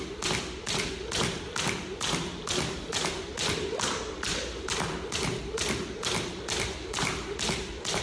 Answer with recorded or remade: recorded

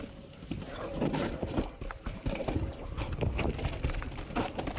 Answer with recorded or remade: recorded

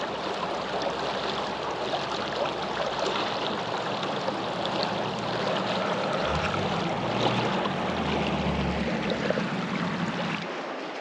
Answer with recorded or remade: recorded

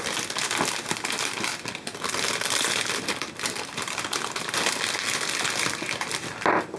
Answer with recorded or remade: recorded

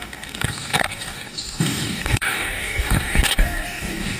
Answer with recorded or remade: remade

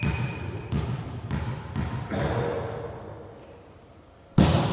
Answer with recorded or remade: recorded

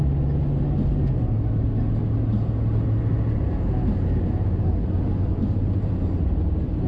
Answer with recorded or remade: recorded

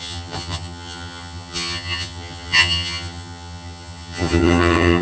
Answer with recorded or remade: remade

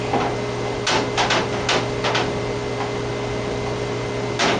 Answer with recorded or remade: recorded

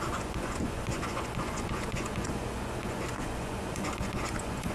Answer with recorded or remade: remade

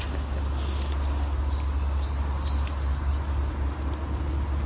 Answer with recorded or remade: recorded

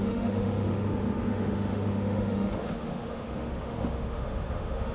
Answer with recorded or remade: remade